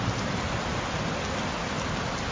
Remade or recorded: recorded